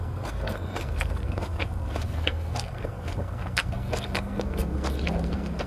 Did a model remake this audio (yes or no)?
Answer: yes